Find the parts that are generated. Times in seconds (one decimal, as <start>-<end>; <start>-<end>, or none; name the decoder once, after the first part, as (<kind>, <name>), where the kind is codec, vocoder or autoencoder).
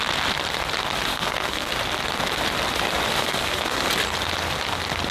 1.1-1.7 (codec, SNAC); 3.2-3.9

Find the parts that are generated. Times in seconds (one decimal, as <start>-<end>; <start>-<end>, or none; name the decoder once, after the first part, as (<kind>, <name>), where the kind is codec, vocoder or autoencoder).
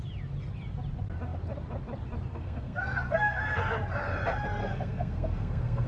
2.3-3.6 (codec, SNAC); 4.6-5.9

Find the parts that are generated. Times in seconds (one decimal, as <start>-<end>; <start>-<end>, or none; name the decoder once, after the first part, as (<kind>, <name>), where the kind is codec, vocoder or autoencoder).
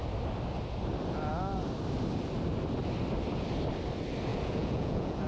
4.3-5.3 (vocoder, Vocos)